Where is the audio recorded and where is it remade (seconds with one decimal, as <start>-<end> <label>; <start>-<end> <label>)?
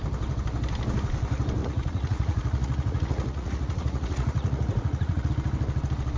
0.0-1.6 recorded; 1.6-5.3 remade; 5.3-6.2 recorded